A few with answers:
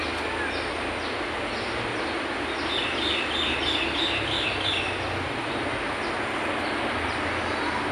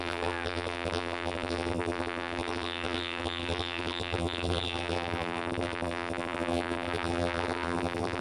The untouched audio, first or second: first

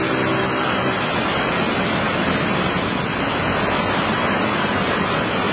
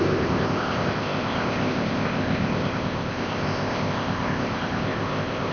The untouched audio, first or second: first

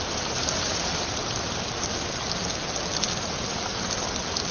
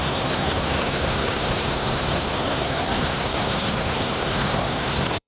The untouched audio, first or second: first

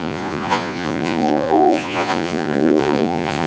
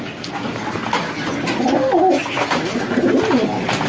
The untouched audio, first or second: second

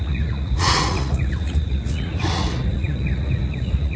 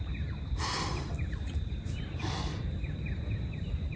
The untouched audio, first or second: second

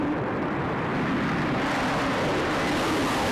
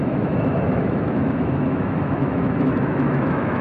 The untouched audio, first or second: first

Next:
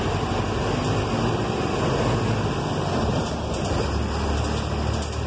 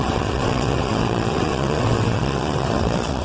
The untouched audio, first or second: first